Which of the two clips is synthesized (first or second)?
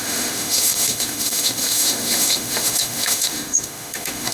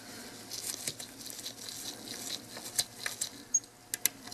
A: first